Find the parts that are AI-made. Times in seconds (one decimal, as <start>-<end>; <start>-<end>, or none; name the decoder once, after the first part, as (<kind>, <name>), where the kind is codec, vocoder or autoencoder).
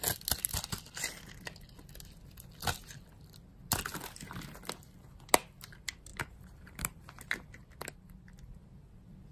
6.1-7.3 (vocoder, BigVGAN v2)